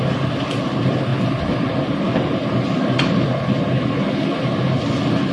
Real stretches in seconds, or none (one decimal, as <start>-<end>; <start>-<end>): 0.0-5.3